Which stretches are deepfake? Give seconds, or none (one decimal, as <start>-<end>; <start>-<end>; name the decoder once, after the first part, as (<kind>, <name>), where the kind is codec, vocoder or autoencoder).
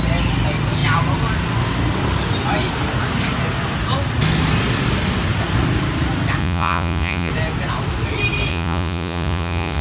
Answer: 6.4-7.3 (vocoder, Vocos); 8.5-9.8